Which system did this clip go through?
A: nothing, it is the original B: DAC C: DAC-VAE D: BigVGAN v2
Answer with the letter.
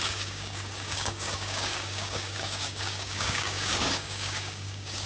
B